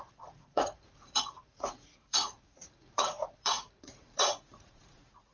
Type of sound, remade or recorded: remade